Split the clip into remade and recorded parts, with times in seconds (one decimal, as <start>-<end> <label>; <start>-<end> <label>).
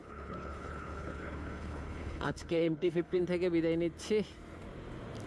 0.0-3.2 remade; 3.2-5.3 recorded